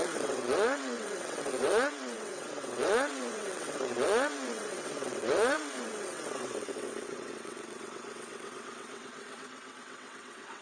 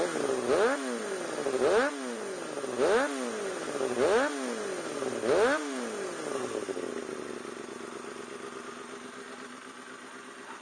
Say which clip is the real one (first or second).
second